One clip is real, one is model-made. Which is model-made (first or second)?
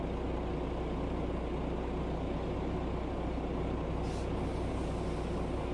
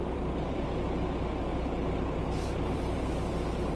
second